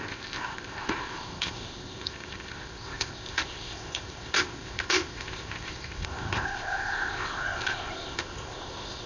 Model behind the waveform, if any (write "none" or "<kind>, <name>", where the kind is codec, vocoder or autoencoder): codec, ZipCodec